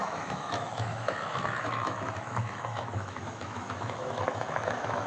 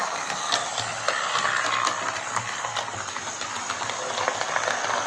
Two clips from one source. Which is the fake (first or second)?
first